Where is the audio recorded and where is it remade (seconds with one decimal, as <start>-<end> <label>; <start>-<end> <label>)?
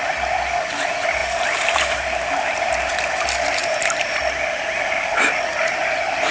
0.0-1.2 recorded; 1.2-3.0 remade; 3.0-3.6 recorded; 3.6-4.2 remade; 4.2-6.3 recorded